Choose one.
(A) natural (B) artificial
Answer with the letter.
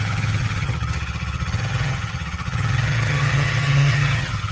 B